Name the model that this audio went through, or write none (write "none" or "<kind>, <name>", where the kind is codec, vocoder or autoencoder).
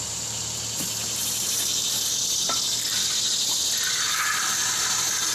none